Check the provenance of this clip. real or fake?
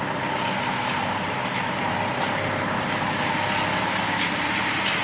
real